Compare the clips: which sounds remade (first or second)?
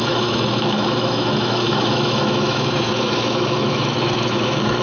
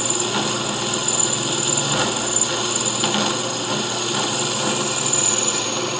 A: first